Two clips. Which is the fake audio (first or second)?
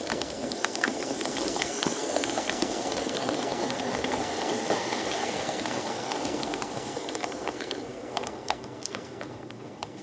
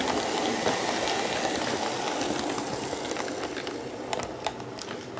first